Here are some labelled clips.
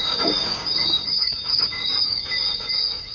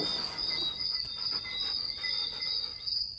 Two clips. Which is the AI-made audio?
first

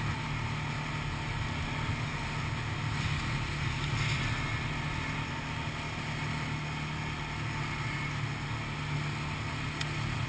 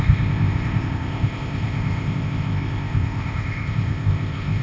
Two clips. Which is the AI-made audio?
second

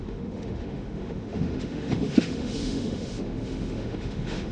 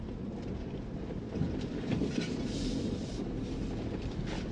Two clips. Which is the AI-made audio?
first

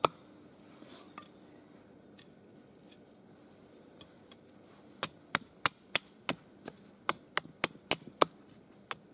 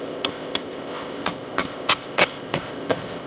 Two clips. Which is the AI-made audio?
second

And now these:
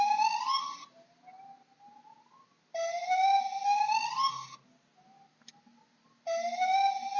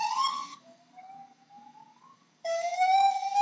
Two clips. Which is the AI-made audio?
second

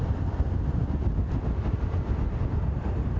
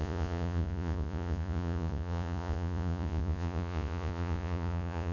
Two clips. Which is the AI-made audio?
second